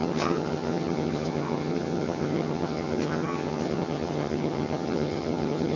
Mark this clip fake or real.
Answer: fake